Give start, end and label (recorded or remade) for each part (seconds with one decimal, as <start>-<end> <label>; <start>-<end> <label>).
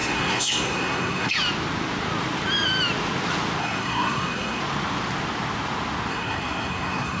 0.0-1.3 remade; 1.3-3.6 recorded; 3.6-4.6 remade; 4.6-6.1 recorded; 6.1-7.2 remade